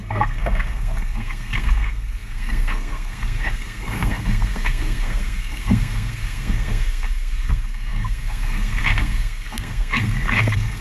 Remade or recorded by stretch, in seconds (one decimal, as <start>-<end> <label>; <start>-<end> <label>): 0.0-10.8 remade